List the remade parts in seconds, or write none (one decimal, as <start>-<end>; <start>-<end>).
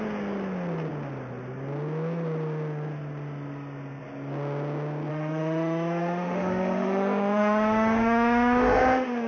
5.1-9.3